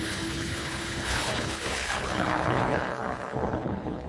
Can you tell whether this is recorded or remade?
remade